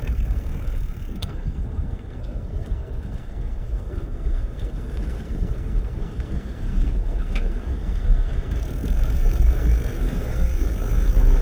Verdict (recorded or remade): remade